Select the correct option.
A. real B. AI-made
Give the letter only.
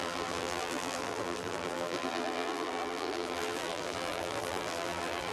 B